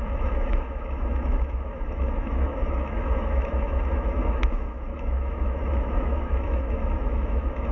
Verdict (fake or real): fake